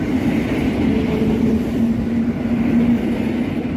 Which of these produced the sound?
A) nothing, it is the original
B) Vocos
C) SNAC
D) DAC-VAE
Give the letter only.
A